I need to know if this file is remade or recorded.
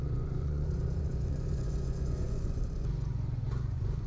remade